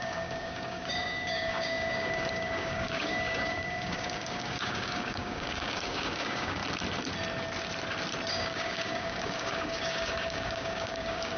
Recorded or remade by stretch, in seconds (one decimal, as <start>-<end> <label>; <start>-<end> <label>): 0.0-6.6 remade; 6.6-8.3 recorded; 8.3-11.4 remade